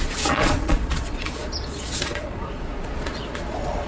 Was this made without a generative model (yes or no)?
no